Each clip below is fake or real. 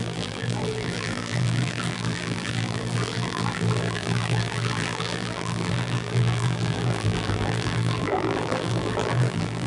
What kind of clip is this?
fake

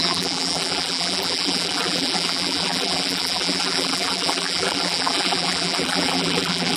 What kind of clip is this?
fake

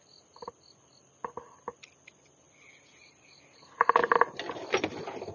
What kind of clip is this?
real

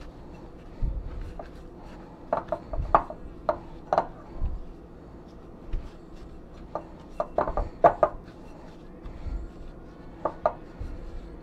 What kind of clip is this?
real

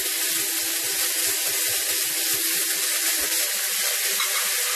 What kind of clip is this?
real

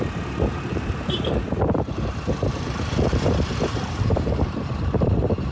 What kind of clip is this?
fake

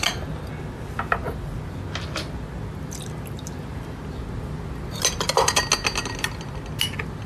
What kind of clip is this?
real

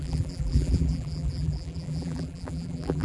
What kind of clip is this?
fake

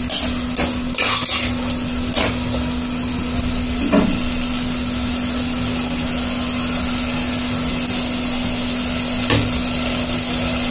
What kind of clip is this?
real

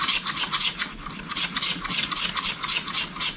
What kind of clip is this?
real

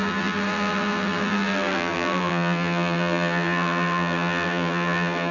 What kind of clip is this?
fake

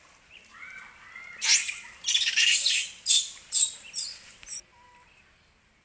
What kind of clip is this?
real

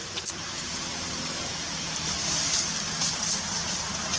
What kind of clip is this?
fake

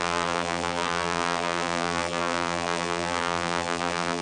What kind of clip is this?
fake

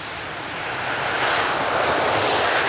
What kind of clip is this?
fake